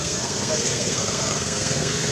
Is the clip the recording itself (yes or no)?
no